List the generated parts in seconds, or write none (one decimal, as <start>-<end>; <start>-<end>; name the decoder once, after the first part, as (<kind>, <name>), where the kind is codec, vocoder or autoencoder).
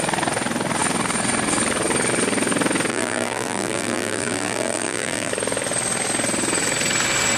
2.9-5.3 (vocoder, BigVGAN v2)